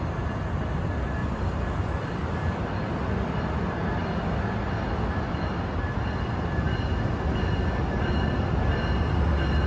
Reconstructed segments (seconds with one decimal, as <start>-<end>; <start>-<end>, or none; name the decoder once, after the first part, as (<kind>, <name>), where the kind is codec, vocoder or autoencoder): 1.2-3.5 (vocoder, BigVGAN v2)